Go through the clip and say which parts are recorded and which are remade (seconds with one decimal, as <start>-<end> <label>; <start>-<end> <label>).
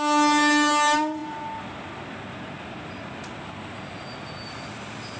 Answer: 0.0-5.2 recorded